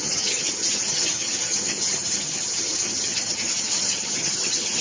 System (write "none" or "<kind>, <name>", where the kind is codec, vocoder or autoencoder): vocoder, HiFi-GAN